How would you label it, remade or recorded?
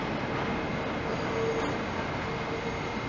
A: recorded